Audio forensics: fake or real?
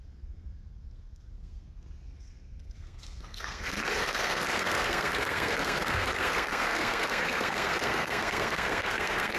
fake